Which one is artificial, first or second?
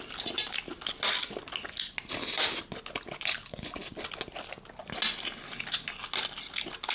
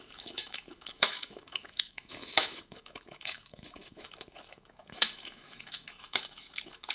second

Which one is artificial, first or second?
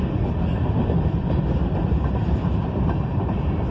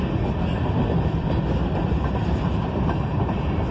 first